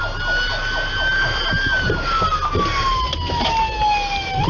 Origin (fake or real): real